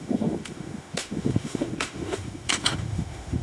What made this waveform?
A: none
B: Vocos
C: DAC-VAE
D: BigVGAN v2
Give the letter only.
C